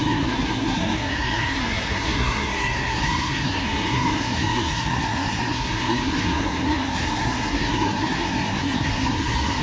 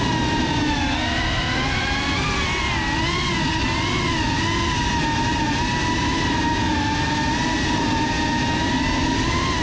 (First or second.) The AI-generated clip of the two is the first